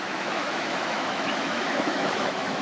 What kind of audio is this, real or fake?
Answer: fake